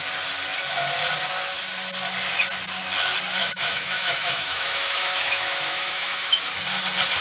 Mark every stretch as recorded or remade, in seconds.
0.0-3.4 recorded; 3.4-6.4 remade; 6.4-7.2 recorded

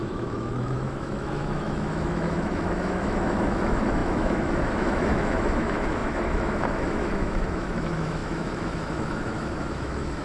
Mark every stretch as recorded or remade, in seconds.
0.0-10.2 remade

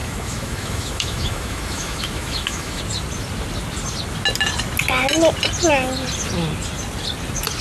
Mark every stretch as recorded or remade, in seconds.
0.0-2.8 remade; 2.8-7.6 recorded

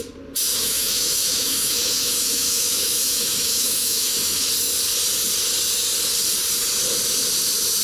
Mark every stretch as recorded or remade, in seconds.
0.0-0.5 recorded; 0.5-4.5 remade; 4.5-7.8 recorded